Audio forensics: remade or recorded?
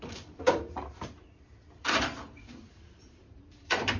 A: remade